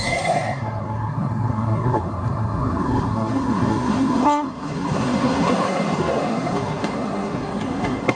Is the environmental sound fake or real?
fake